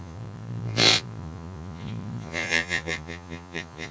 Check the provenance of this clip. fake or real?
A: fake